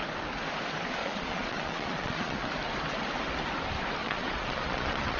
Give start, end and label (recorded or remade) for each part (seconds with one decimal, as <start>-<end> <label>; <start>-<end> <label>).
0.0-1.0 recorded; 1.0-2.5 remade; 2.5-4.0 recorded; 4.0-5.2 remade